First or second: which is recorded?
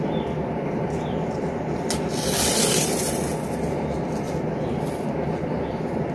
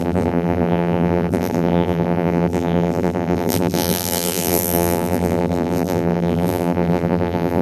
first